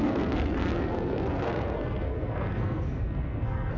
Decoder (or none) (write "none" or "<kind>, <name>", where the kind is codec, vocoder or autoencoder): codec, SNAC